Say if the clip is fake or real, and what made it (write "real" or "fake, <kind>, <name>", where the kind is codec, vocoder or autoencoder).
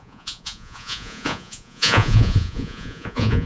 fake, vocoder, Vocos